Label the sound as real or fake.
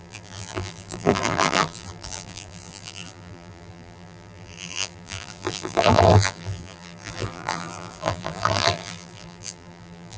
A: fake